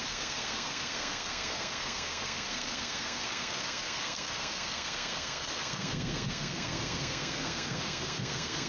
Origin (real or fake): fake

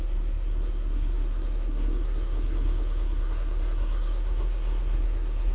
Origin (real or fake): fake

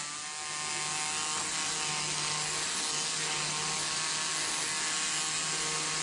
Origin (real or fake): real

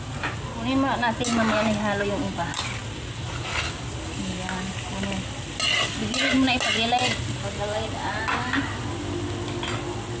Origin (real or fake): real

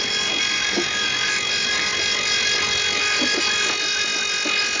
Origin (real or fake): real